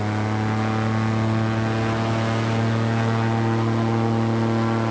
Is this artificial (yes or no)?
no